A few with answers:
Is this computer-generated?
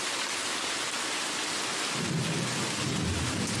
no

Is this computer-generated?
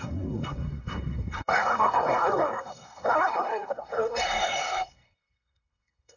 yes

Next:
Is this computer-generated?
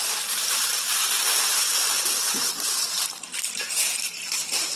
yes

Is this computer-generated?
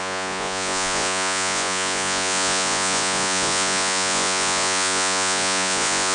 yes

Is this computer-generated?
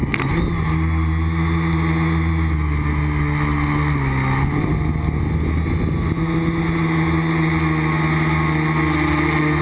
no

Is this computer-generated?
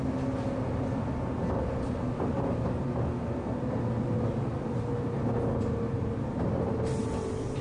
no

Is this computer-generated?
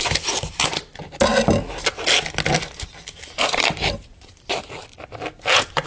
no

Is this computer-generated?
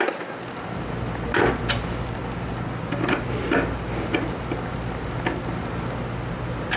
no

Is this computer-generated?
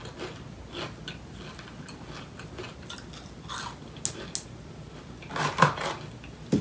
no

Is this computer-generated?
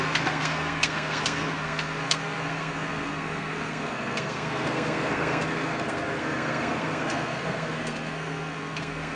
yes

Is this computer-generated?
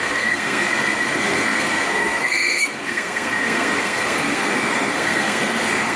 yes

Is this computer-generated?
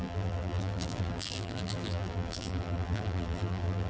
yes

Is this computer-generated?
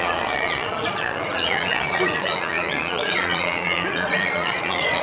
yes